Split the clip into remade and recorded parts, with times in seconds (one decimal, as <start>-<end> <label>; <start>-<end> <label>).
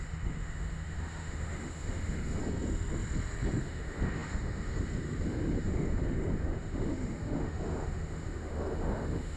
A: 0.0-2.4 remade; 2.4-3.6 recorded; 3.6-9.4 remade